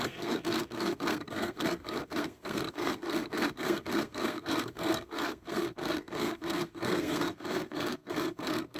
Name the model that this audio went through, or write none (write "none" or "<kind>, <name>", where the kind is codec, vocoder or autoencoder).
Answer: codec, SNAC